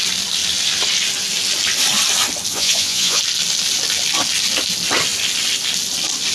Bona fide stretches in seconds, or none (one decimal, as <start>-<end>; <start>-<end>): 0.0-2.5; 3.2-6.3